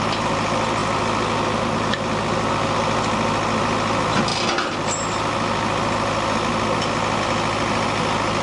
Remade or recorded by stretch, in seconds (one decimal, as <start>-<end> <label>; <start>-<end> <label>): 0.0-8.4 recorded